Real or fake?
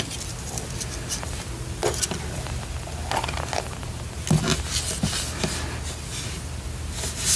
real